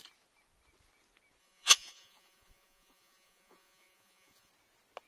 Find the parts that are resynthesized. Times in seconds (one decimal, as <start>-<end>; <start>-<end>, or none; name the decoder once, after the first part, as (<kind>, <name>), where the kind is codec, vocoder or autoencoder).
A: 1.4-4.5 (vocoder, Vocos)